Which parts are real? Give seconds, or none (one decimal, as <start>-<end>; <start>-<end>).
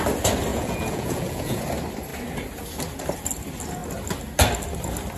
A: 0.0-0.5; 1.6-5.2